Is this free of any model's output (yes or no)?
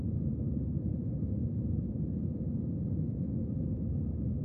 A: yes